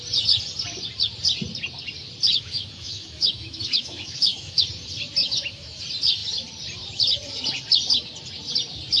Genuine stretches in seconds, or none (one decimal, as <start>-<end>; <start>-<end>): 0.0-2.3; 4.6-5.2; 5.8-9.0